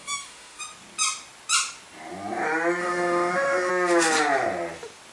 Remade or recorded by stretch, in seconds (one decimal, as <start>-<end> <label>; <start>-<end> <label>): 0.0-0.6 remade; 0.6-2.8 recorded; 2.8-3.7 remade; 3.7-5.1 recorded